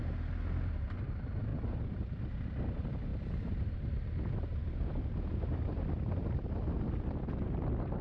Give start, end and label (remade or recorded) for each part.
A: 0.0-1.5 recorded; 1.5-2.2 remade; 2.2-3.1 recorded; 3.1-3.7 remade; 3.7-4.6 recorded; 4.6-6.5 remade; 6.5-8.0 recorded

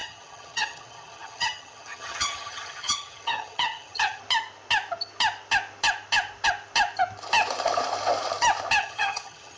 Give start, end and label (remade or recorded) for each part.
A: 0.0-4.2 remade; 4.2-8.8 recorded; 8.8-9.6 remade

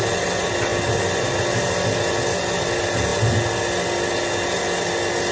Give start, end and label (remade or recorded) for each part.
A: 0.0-5.3 recorded

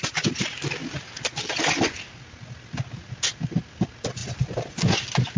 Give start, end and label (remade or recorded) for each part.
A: 0.0-0.8 recorded; 0.8-1.5 remade; 1.5-5.4 recorded

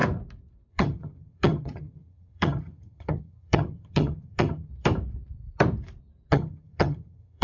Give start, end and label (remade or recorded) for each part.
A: 0.0-0.7 recorded; 0.7-4.7 remade; 4.7-6.3 recorded; 6.3-7.4 remade

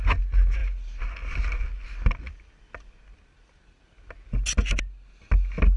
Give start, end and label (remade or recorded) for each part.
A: 0.0-5.8 recorded

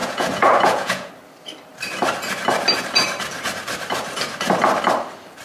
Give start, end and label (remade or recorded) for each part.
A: 0.0-1.1 remade; 1.1-5.4 recorded

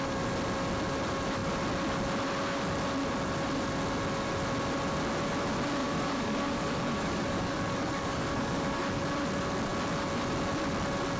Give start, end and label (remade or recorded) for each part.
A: 0.0-5.8 recorded; 5.8-9.0 remade; 9.0-11.2 recorded